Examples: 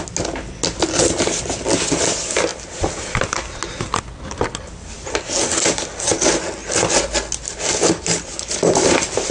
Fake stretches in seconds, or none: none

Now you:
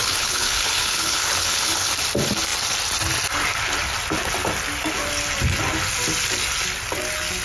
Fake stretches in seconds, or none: 0.0-1.9 (codec, HILCodec)

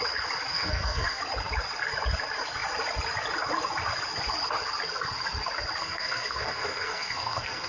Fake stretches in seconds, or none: 0.5-1.2 (codec, SNAC); 5.8-7.7

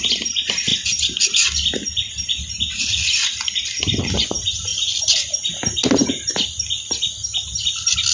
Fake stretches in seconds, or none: none